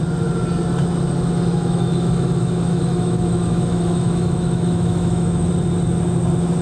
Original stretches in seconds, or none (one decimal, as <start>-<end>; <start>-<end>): 0.0-1.5; 5.5-6.6